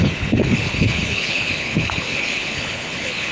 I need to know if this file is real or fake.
fake